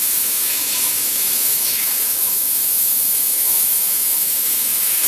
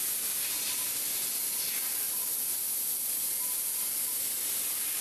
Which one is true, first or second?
second